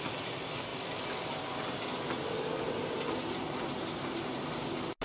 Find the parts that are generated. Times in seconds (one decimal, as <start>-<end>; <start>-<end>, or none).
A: none